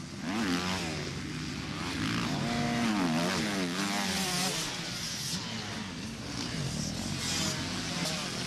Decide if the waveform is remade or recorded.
recorded